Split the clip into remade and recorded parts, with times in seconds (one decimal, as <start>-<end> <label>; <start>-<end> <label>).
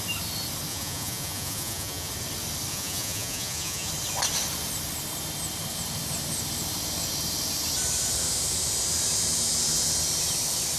0.0-0.7 recorded; 0.7-2.1 remade; 2.1-2.7 recorded; 2.7-3.9 remade; 3.9-10.8 recorded